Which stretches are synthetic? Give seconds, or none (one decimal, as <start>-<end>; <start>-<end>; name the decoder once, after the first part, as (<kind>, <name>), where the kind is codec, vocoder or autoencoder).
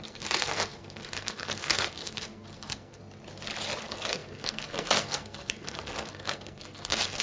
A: 0.0-3.0 (codec, SNAC); 3.8-7.2